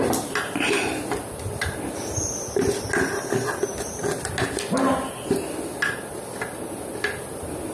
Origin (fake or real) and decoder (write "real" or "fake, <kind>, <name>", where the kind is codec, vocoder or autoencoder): real